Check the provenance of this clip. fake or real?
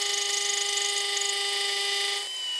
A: real